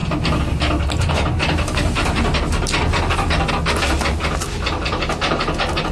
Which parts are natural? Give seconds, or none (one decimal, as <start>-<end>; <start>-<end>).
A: 0.0-5.9